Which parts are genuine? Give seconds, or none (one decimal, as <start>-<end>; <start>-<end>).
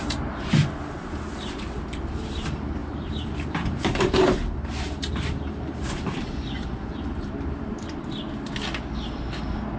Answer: 0.0-2.8; 8.0-9.8